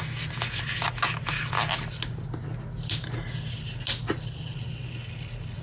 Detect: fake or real real